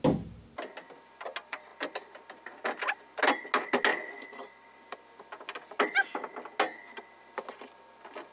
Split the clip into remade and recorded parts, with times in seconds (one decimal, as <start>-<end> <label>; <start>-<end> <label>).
0.0-8.3 recorded